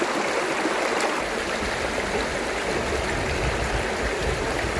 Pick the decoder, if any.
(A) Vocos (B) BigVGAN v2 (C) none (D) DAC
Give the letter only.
C